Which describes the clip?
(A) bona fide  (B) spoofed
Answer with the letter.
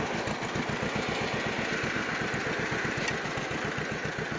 A